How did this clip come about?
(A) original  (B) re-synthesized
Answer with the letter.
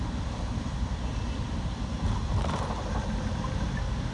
A